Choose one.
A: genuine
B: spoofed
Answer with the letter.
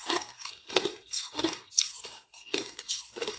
B